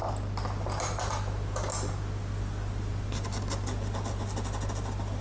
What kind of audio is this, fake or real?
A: real